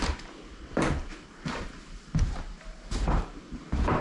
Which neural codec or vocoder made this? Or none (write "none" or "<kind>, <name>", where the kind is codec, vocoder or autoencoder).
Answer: vocoder, BigVGAN v2